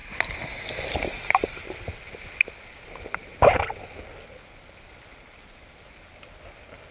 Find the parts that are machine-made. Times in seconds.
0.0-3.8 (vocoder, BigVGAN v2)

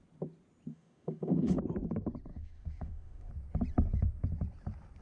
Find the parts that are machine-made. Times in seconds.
0.7-1.6 (autoencoder, DAC-VAE); 2.3-3.3

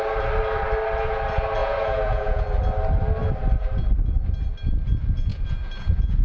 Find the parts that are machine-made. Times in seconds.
1.6-2.4 (vocoder, Vocos); 5.3-6.2

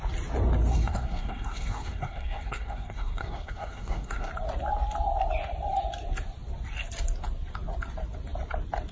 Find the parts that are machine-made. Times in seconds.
0.7-4.3 (codec, SNAC)

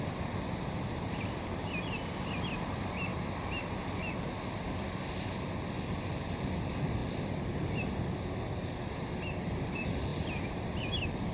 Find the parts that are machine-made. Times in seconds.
none

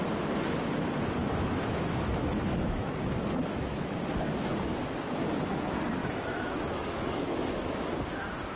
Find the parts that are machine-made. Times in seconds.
1.2-4.1 (autoencoder, DAC-VAE); 6.0-7.9

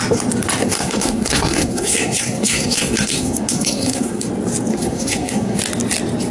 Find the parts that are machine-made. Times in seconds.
0.6-4.3 (codec, SNAC); 4.7-5.6